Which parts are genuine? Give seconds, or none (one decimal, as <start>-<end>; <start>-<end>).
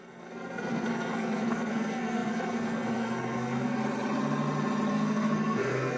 3.8-4.9